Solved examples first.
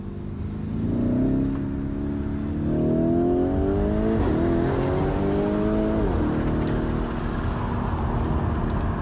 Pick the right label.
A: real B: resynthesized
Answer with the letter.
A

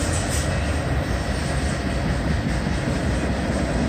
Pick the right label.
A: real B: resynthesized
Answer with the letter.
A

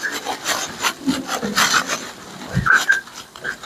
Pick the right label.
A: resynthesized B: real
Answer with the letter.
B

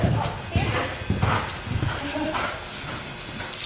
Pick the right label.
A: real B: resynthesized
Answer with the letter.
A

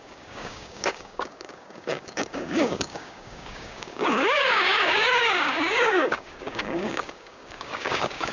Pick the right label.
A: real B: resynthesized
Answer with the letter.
B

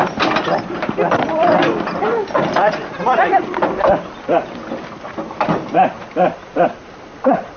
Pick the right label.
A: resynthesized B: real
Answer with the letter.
B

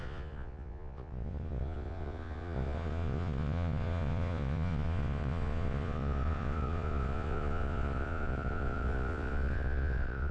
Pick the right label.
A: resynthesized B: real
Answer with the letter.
A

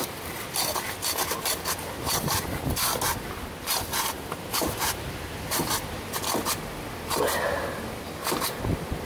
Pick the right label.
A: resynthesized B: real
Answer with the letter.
B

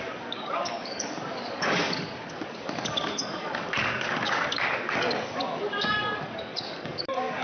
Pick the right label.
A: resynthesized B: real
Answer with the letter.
A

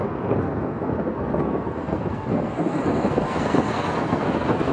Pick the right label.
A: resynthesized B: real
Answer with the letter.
A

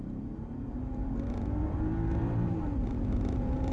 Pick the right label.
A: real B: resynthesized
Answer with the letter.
B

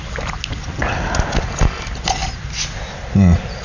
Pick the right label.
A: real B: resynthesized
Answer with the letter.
A